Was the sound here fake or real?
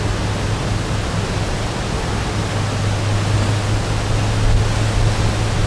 real